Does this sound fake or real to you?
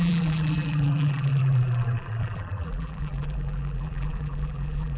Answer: fake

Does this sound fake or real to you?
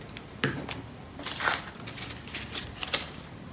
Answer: fake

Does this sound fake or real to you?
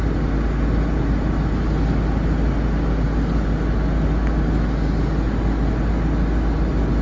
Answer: real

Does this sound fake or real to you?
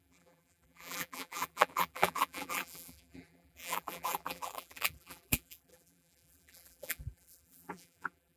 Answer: fake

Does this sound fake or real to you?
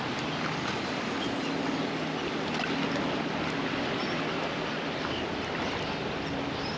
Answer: real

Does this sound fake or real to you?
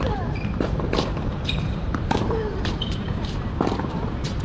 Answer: fake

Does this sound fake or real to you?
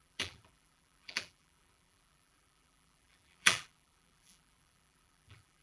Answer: fake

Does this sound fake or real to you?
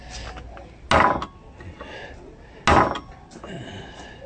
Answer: real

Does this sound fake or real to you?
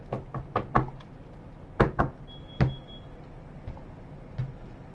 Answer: real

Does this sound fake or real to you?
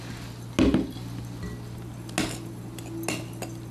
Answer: real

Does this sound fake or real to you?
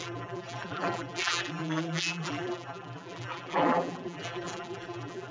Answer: fake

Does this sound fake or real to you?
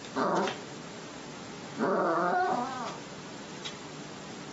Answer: real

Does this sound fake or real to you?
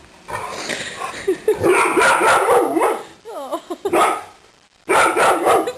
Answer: fake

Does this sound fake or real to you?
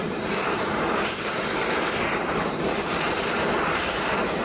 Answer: fake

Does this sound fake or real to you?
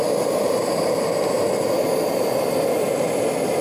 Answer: real